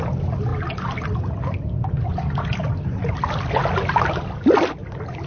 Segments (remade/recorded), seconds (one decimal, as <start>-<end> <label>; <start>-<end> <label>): 0.0-5.3 recorded